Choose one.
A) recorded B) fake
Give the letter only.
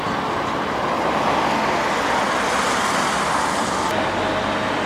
A